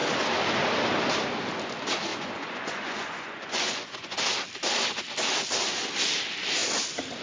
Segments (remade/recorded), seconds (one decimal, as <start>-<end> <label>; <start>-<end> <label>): 0.0-2.1 recorded; 2.1-4.2 remade; 4.2-7.2 recorded